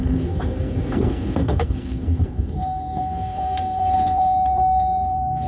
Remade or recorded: remade